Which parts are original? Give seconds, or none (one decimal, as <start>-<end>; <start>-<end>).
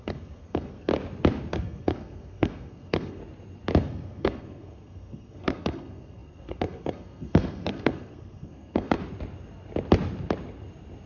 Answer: 0.9-1.5; 3.2-3.8; 9.0-11.1